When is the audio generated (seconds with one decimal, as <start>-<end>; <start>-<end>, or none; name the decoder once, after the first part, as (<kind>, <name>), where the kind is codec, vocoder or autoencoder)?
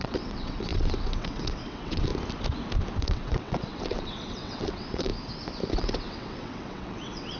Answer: 0.0-2.1 (vocoder, WaveNeXt); 3.0-5.1; 5.7-7.4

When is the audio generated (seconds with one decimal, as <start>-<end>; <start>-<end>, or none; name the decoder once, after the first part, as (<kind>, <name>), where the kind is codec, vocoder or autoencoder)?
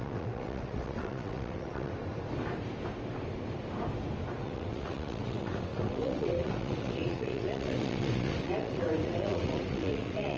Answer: 0.0-1.9 (vocoder, WaveNeXt); 4.4-10.4